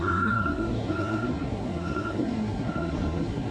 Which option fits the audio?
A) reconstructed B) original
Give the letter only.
A